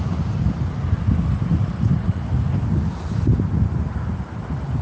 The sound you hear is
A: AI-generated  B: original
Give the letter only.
B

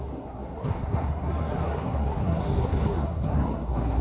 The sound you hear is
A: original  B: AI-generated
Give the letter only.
B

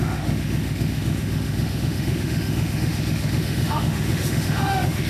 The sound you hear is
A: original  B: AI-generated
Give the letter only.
B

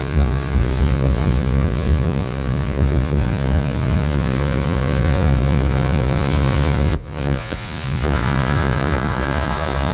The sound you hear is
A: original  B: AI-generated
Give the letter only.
B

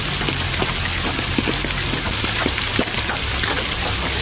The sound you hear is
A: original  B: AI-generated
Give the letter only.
A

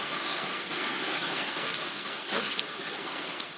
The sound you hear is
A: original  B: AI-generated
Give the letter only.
B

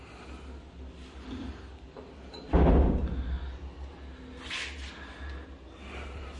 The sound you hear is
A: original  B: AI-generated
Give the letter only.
A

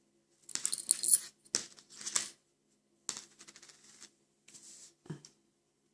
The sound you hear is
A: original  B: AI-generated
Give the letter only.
A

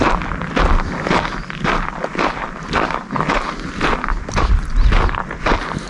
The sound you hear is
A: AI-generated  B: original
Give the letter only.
B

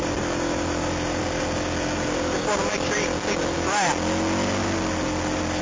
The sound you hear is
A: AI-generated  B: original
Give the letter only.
B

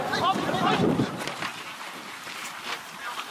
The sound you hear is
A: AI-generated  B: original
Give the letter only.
A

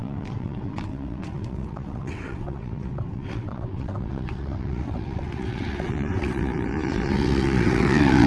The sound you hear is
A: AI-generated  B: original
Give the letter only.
A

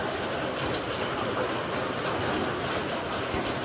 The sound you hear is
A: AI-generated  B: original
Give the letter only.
B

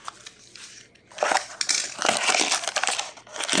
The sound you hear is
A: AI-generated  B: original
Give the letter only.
B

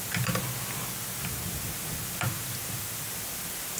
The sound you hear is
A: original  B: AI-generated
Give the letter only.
A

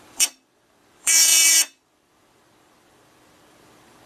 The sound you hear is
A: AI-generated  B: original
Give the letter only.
A